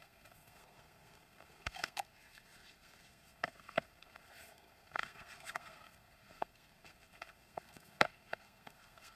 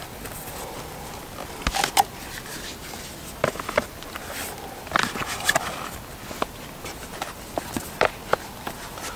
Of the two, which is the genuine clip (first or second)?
second